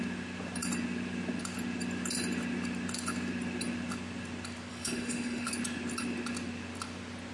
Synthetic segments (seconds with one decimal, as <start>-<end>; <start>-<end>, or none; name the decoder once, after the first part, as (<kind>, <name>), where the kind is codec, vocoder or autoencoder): 4.7-5.5 (autoencoder, DAC-VAE)